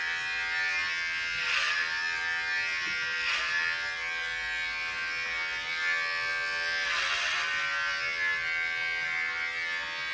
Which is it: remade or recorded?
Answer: recorded